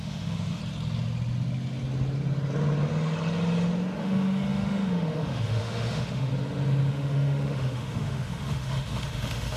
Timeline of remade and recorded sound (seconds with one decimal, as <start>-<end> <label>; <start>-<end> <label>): 0.0-0.6 remade; 0.6-4.0 recorded; 4.0-6.3 remade; 6.3-6.9 recorded; 6.9-9.6 remade